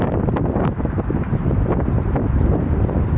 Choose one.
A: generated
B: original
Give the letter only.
B